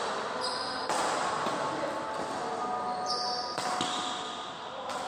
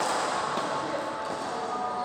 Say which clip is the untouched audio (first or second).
first